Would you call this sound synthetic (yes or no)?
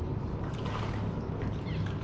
no